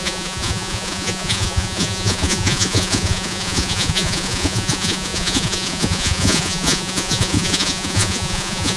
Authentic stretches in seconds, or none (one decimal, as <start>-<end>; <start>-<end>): none